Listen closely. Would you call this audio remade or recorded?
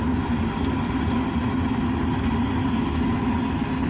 recorded